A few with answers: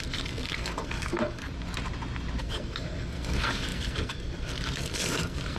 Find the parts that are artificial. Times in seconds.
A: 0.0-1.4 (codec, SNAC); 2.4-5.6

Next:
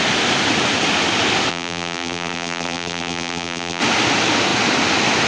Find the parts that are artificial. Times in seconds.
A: 1.5-3.8 (vocoder, BigVGAN v2)

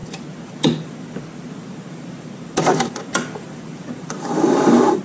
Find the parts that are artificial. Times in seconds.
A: 0.0-5.0 (vocoder, BigVGAN v2)

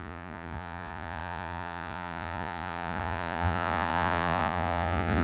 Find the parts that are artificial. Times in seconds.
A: 0.0-5.2 (vocoder, Vocos)

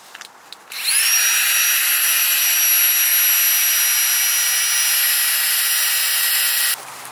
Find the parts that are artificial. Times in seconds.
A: none